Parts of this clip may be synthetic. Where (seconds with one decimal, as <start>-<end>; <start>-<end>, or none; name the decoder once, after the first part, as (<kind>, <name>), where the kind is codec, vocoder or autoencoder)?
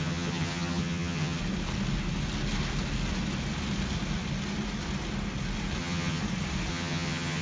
0.0-1.4 (vocoder, HiFi-GAN); 5.8-6.2; 6.7-7.4